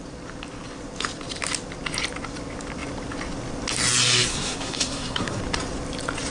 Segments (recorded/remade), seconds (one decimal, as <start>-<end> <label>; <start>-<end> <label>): 0.0-4.3 recorded; 4.3-5.4 remade; 5.4-6.3 recorded